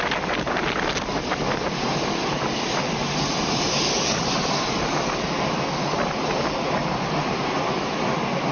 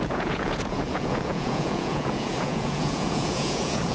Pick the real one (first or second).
first